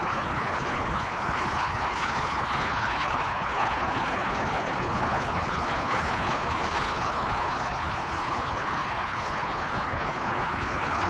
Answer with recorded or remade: remade